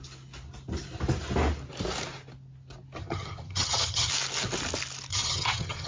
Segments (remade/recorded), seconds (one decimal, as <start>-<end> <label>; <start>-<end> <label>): 0.0-3.0 recorded; 3.0-4.1 remade; 4.1-5.1 recorded; 5.1-5.9 remade